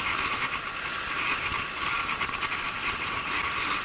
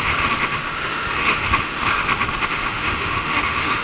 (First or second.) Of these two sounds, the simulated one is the second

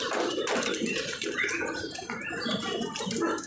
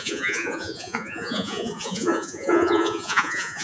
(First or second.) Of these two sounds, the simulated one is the second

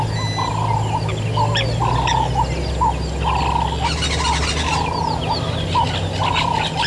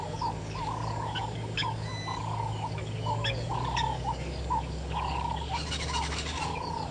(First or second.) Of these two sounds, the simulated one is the second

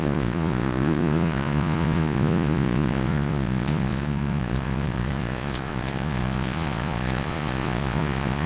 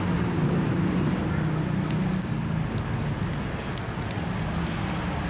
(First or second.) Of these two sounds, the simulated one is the first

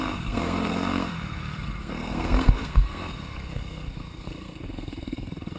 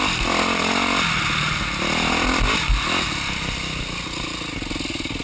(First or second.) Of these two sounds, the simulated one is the first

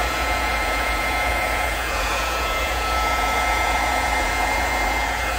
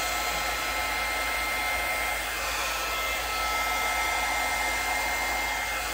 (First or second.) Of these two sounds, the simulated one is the first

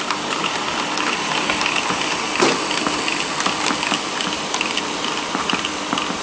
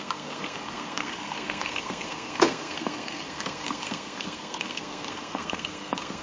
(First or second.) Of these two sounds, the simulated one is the second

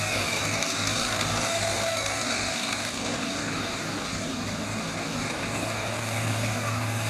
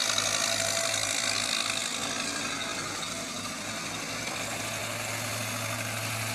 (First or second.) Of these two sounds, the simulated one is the first